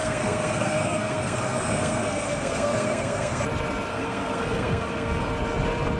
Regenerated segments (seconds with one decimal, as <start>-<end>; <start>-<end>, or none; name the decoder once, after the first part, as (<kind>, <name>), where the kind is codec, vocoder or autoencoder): 0.0-3.4 (codec, SNAC); 3.9-5.3